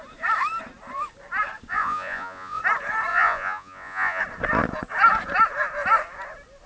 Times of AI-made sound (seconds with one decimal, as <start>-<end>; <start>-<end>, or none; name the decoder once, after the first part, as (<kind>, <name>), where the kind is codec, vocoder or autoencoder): 1.7-2.6 (vocoder, Vocos); 3.1-4.2